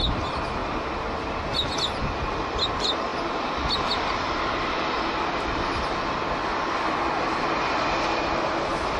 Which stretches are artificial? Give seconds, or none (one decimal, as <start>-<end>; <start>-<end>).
none